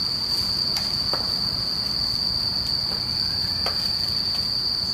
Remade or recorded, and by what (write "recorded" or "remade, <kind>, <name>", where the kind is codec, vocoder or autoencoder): recorded